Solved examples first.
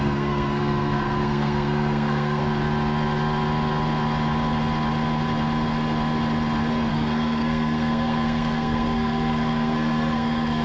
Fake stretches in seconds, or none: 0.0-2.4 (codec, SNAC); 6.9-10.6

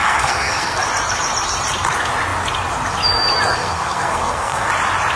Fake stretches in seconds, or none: 0.0-0.8 (codec, SNAC); 3.5-4.7

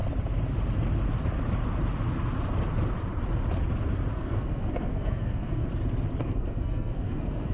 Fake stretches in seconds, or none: 4.1-5.6 (codec, SNAC); 6.2-7.5

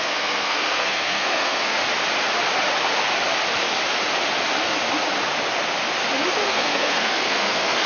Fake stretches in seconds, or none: 0.0-1.8 (codec, SNAC); 6.5-7.9

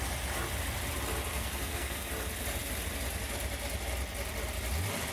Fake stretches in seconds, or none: 1.3-2.1 (codec, SNAC)

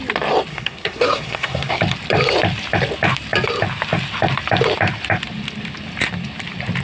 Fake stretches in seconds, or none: 0.5-1.8 (codec, SNAC)

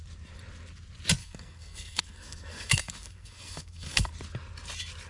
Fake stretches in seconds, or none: 1.2-4.1 (codec, SNAC)